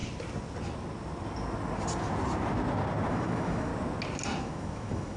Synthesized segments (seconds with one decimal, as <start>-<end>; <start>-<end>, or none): 3.1-3.7; 4.4-5.2